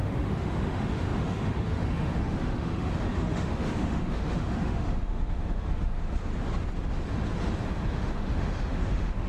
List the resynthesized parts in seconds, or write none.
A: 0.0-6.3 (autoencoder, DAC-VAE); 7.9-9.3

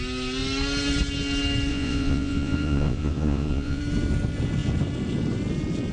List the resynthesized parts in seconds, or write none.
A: 1.7-3.8 (vocoder, Vocos)

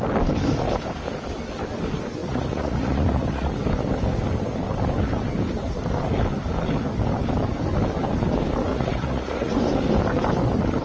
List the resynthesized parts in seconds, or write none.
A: 2.2-3.5 (vocoder, Vocos); 8.7-9.6